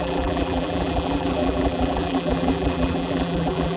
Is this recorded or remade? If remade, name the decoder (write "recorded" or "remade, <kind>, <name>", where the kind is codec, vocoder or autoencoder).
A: remade, vocoder, BigVGAN v2